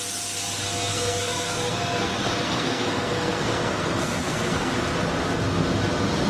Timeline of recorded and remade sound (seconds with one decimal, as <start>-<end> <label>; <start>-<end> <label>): 0.0-0.9 recorded; 0.9-4.7 remade; 4.7-6.3 recorded